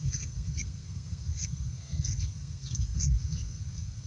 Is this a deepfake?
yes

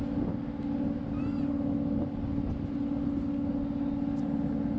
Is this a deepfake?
no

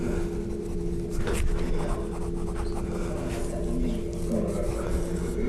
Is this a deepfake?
no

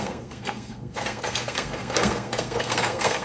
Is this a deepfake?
yes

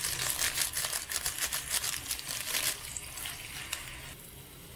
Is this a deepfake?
no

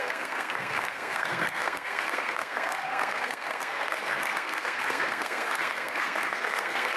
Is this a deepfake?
yes